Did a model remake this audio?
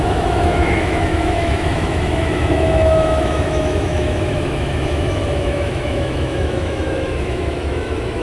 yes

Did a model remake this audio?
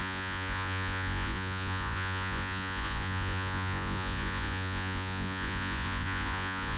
yes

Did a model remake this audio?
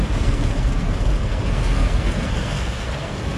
yes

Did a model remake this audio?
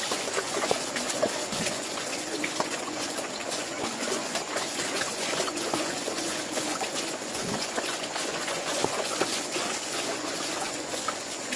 yes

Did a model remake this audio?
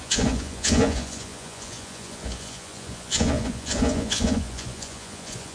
yes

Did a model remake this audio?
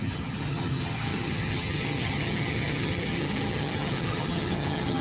yes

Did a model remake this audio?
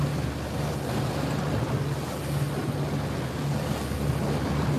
no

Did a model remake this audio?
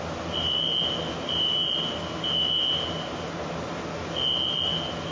no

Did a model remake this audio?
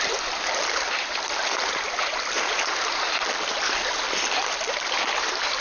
no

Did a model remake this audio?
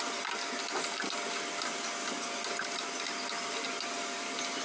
no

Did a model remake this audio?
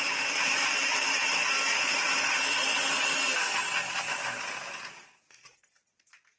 yes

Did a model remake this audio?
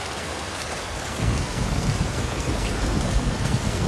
yes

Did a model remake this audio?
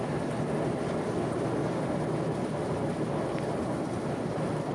no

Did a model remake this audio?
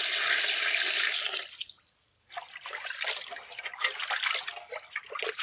no